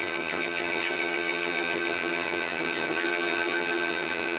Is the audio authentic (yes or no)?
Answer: no